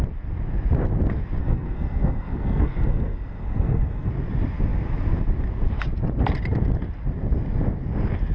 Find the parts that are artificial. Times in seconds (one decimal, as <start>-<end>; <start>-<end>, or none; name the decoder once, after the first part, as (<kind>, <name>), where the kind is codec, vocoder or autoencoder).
1.4-4.1 (codec, SNAC)